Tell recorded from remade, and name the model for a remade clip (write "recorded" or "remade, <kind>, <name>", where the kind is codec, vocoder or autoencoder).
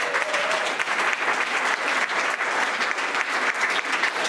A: recorded